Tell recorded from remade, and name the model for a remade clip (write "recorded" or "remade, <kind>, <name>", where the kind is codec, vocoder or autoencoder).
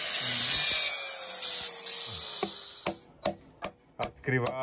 recorded